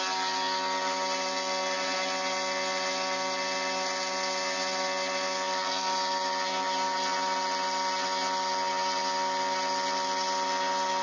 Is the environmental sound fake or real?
real